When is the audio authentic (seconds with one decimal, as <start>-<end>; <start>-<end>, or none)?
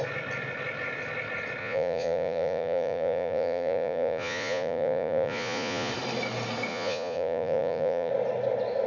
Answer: 0.0-1.6; 5.9-6.7; 8.1-8.9